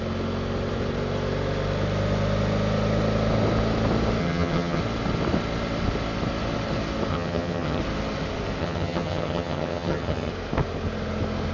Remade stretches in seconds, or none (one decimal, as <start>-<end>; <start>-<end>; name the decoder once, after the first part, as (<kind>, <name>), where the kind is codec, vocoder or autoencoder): 4.2-4.8 (vocoder, HiFi-GAN); 7.1-7.8; 8.6-10.3